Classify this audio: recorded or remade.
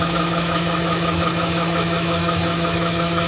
remade